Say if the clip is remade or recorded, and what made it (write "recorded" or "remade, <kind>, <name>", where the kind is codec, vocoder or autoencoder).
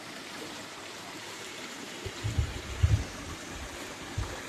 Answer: remade, vocoder, BigVGAN v2